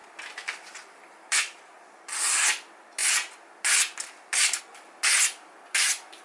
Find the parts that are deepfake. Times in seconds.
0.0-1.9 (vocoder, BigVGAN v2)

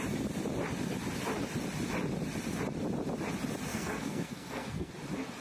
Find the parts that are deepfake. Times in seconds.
3.7-4.9 (codec, SNAC)

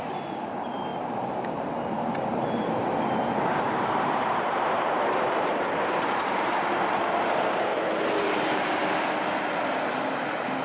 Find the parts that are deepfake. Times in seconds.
0.0-7.7 (vocoder, BigVGAN v2); 8.3-8.8; 10.2-10.6

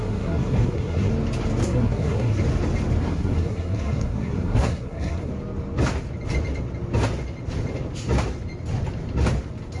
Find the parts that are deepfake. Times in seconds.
0.0-1.1 (codec, SNAC); 1.6-2.4; 3.0-5.3

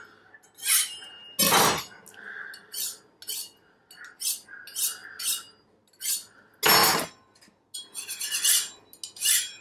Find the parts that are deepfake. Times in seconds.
none

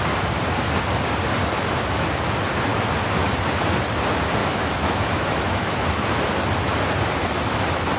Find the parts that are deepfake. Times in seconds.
4.4-5.8 (autoencoder, DAC-VAE)

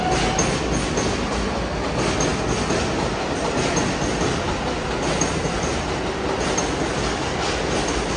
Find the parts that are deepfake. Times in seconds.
none